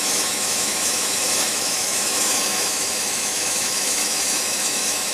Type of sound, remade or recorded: remade